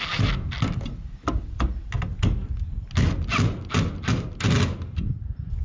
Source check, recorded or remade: recorded